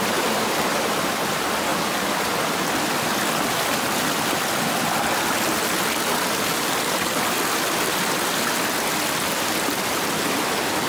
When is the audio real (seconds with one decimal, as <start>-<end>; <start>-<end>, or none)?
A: 0.0-10.9